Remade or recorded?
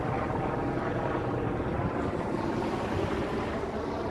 remade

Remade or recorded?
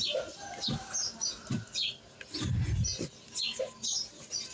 recorded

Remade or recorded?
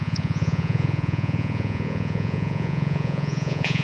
remade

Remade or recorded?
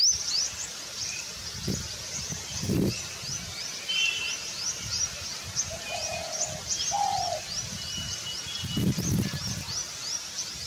recorded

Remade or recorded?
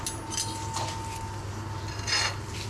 recorded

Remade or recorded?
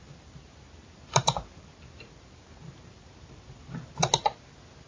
recorded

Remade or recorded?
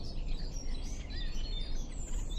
remade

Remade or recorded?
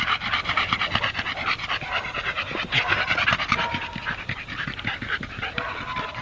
recorded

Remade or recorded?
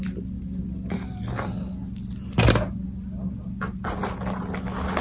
recorded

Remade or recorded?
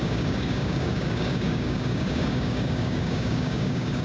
remade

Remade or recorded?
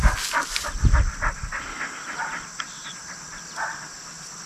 recorded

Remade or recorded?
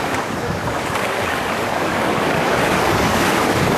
remade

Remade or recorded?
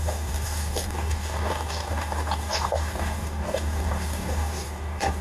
remade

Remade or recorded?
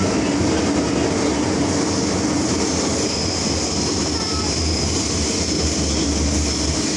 recorded